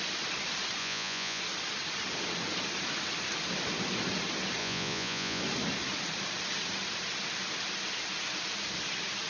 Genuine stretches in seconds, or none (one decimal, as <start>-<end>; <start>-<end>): 0.0-0.8; 1.4-4.6; 5.4-9.3